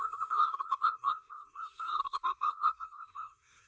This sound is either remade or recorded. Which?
remade